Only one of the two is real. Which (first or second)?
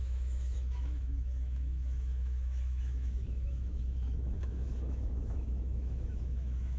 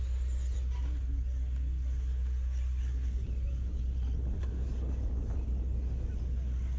second